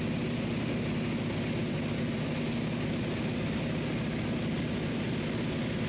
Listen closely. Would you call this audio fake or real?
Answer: real